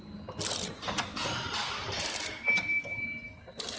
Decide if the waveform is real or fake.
real